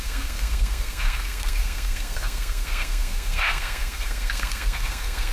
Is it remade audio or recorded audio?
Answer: remade